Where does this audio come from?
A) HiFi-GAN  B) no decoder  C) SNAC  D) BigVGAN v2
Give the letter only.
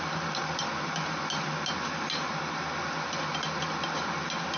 B